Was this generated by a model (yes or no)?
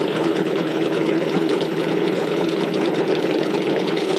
yes